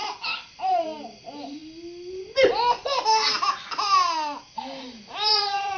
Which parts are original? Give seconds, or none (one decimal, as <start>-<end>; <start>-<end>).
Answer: 1.6-5.1